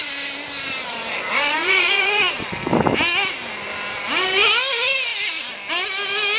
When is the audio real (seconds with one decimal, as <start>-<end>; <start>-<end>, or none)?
0.0-1.3; 2.2-6.4